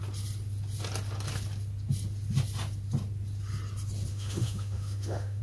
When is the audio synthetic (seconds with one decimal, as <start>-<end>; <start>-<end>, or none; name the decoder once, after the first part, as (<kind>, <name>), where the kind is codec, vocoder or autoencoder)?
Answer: 4.1-5.4 (autoencoder, DAC-VAE)